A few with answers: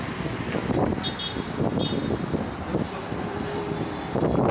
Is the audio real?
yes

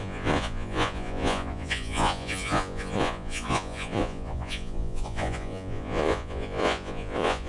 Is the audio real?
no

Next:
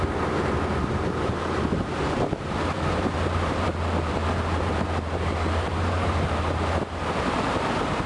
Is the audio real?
no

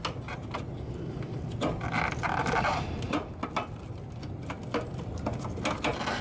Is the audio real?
yes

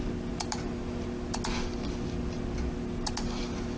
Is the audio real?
yes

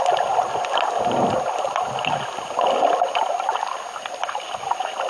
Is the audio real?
yes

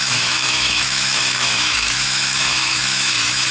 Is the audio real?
no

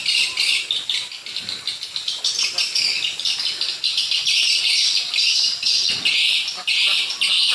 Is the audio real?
yes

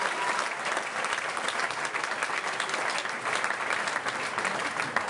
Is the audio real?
yes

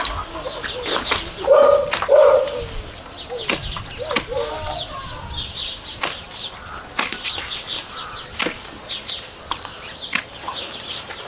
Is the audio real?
yes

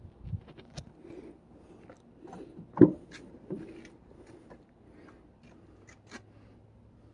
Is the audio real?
yes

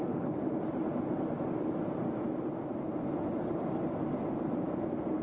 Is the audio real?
yes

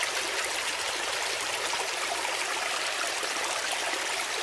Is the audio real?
yes